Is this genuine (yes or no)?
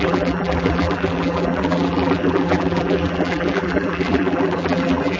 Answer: no